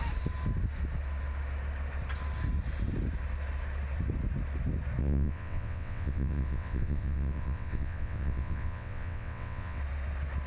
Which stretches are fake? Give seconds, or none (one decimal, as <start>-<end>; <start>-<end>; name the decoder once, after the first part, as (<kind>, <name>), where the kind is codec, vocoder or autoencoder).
5.0-9.8 (vocoder, WaveNeXt)